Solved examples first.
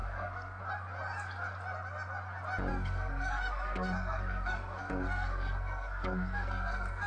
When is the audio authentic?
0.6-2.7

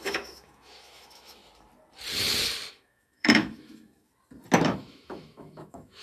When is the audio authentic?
1.4-2.7; 4.1-4.6

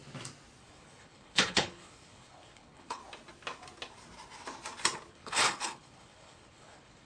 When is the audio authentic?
0.0-0.6; 3.0-5.1

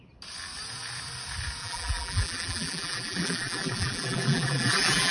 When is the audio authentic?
0.0-1.6